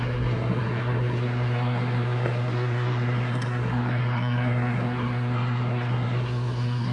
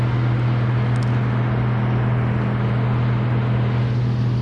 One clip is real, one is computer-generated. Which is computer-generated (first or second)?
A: first